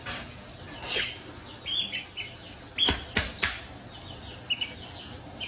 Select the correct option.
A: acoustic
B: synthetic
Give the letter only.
A